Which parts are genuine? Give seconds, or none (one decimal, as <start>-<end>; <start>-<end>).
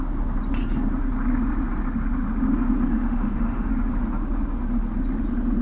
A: 0.0-2.9; 3.7-5.6